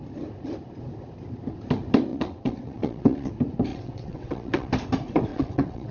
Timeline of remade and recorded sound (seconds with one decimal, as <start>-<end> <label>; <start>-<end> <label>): 0.0-2.1 recorded; 2.1-3.3 remade; 3.3-3.7 recorded; 3.7-4.7 remade; 4.7-5.3 recorded; 5.3-5.9 remade